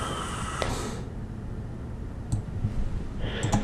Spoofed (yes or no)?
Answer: no